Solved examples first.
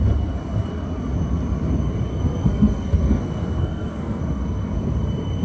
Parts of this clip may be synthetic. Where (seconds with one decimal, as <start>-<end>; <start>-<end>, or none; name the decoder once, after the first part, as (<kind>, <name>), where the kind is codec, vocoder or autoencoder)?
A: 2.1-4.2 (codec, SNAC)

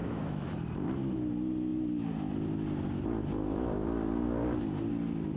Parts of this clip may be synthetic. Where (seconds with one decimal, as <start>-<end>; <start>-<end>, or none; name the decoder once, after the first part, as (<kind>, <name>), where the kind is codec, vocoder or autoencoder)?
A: 0.0-0.5 (autoencoder, DAC-VAE)

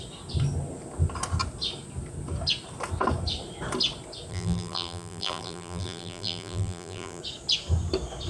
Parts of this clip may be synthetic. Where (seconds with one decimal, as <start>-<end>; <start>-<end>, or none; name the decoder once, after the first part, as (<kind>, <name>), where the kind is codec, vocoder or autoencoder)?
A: 4.3-7.2 (vocoder, BigVGAN v2)

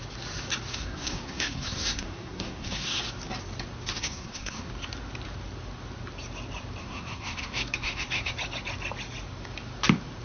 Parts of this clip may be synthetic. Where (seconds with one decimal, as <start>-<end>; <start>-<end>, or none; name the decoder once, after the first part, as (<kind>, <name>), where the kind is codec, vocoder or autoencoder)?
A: 0.7-3.0 (codec, SNAC); 3.9-4.7; 6.8-8.3

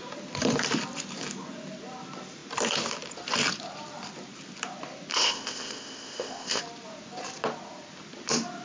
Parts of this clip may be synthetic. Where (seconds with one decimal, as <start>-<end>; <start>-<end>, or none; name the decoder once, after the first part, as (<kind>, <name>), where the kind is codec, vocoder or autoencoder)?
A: 5.1-6.6 (codec, ZipCodec)

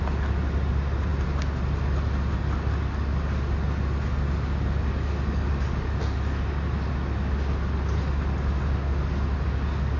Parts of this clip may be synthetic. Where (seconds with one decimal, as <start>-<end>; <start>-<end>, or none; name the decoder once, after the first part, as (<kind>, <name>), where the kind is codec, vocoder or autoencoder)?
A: none